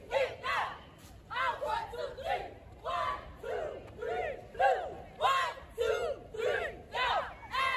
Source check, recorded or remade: recorded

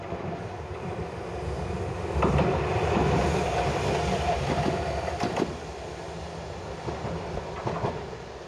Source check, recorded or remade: recorded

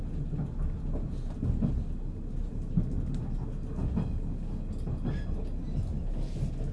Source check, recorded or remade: recorded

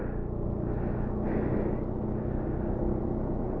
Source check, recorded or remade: recorded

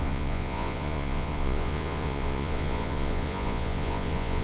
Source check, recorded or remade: remade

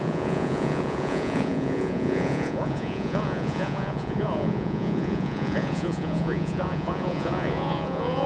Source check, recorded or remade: remade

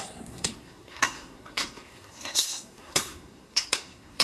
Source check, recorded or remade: remade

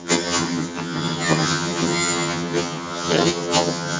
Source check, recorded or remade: remade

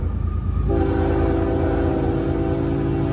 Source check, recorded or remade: recorded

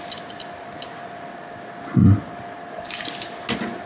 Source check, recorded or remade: recorded